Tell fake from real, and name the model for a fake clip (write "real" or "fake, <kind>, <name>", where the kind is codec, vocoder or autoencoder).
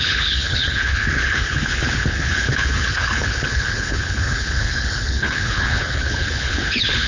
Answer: fake, codec, HILCodec